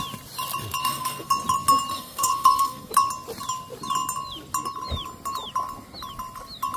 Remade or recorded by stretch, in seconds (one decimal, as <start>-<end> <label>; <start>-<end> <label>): 0.0-0.8 recorded; 0.8-1.3 remade; 1.3-1.9 recorded; 1.9-2.9 remade; 2.9-6.8 recorded